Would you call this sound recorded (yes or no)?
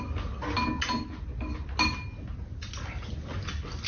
yes